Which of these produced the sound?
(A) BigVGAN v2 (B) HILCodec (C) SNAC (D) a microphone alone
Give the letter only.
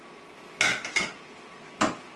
D